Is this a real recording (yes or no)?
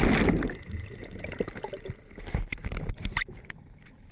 yes